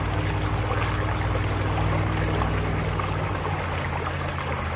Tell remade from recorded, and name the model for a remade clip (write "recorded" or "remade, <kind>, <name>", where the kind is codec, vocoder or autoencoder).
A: recorded